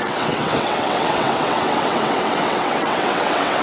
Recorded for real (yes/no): no